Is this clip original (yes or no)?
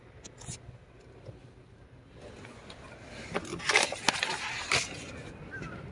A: yes